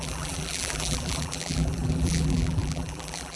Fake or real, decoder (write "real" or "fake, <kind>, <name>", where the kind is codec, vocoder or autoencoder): fake, vocoder, BigVGAN v2